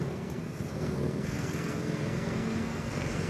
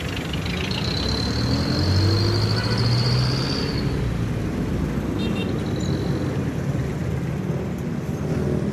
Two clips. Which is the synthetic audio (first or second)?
first